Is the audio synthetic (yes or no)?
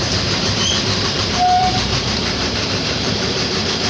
yes